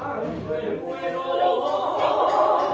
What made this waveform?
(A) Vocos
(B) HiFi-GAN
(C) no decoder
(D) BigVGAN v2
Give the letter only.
C